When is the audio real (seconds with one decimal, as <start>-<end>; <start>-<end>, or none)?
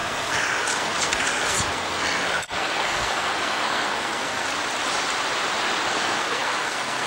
4.5-5.9